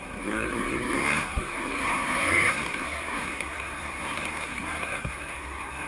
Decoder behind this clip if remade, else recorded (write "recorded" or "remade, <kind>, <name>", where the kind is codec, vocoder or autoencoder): remade, codec, SNAC